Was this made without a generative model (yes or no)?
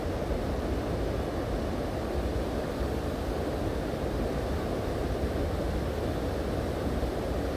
yes